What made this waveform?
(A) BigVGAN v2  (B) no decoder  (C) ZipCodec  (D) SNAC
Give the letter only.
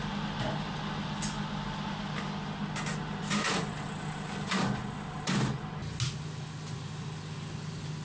B